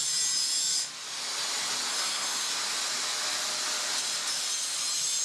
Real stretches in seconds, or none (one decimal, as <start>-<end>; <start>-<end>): 0.0-1.9; 2.5-5.2